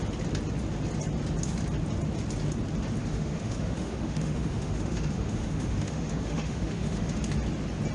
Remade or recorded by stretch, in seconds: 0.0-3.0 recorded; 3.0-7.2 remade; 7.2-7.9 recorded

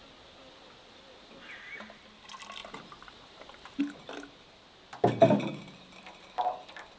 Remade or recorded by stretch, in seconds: 0.0-2.6 recorded; 2.6-3.8 remade; 3.8-5.2 recorded; 5.2-5.7 remade; 5.7-7.0 recorded

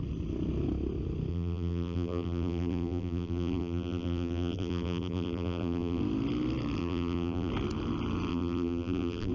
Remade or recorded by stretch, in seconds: 0.0-1.3 recorded; 1.3-6.0 remade; 6.0-6.8 recorded; 6.8-7.5 remade; 7.5-8.3 recorded; 8.3-9.3 remade

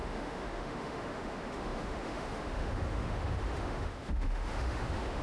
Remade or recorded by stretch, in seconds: 0.0-5.2 remade

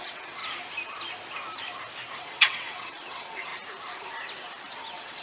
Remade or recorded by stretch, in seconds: 0.0-0.4 remade; 0.4-2.1 recorded; 2.1-3.5 remade; 3.5-4.8 recorded; 4.8-5.2 remade

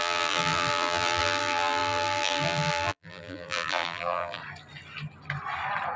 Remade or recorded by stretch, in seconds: 0.0-4.4 remade; 4.4-6.0 recorded